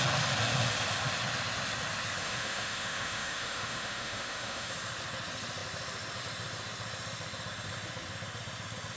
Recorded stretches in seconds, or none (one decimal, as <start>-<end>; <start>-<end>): 0.0-2.2; 4.7-9.0